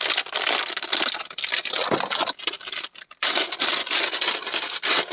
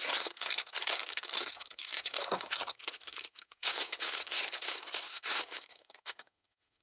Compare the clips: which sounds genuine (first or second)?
first